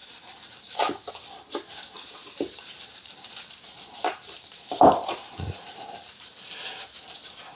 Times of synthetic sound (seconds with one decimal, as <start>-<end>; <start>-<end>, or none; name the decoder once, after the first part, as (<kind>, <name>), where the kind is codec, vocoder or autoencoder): 0.0-1.1 (vocoder, BigVGAN v2); 2.2-6.5